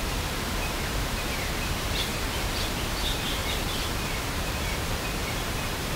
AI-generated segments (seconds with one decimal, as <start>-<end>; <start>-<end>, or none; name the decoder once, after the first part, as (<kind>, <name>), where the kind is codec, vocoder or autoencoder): 0.0-2.1 (vocoder, BigVGAN v2); 2.9-3.4; 4.3-6.0